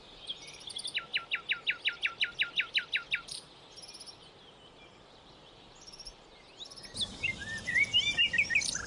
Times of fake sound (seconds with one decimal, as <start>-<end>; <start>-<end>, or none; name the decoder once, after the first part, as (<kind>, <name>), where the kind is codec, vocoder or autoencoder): none